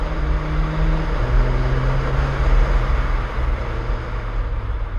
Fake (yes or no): no